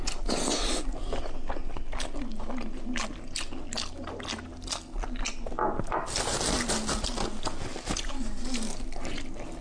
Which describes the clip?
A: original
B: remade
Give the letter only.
A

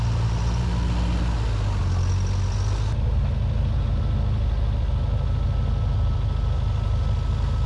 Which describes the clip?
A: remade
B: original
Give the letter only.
B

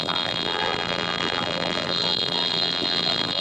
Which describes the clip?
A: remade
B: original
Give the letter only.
A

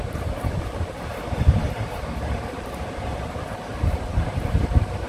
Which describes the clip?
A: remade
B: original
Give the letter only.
A